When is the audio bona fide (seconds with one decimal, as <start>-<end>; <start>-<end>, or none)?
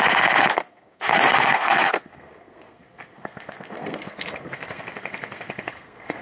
none